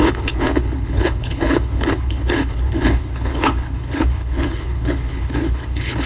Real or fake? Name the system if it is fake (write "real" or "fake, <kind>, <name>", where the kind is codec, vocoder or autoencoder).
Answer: fake, codec, HILCodec